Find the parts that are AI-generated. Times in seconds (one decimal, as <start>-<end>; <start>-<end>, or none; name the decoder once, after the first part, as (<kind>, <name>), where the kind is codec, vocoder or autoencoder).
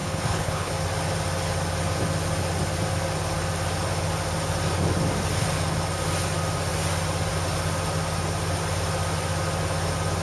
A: 0.0-0.7 (codec, HILCodec)